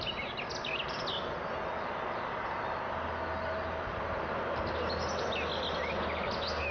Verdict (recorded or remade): recorded